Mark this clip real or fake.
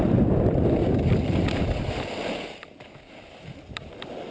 real